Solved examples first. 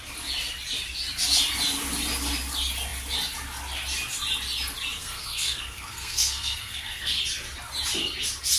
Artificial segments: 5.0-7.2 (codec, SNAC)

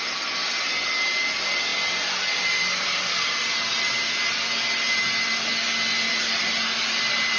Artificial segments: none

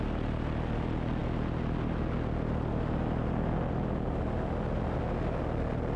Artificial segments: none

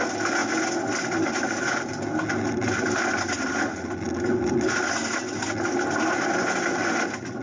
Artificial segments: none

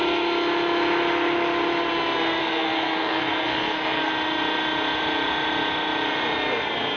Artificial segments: 2.4-4.1 (codec, SNAC)

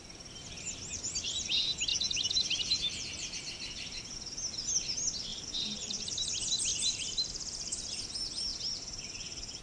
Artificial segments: 1.9-4.0 (vocoder, BigVGAN v2); 5.3-6.0; 6.7-7.3; 8.5-9.6

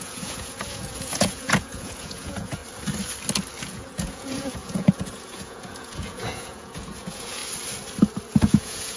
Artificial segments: 0.0-2.6 (vocoder, Vocos); 3.6-7.4; 8.3-9.0

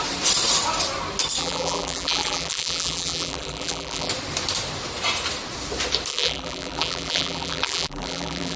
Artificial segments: 1.4-4.1 (vocoder, BigVGAN v2); 6.1-8.6